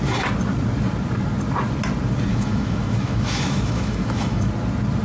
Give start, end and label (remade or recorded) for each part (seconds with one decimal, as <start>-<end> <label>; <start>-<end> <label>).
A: 0.0-2.3 recorded; 2.3-4.5 remade; 4.5-5.0 recorded